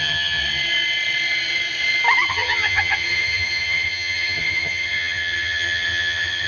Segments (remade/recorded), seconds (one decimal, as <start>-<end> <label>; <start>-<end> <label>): 0.0-0.4 remade; 0.4-2.3 recorded; 2.3-6.5 remade